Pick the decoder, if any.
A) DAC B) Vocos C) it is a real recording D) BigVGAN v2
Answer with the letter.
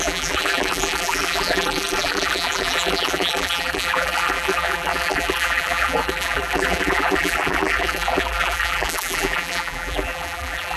D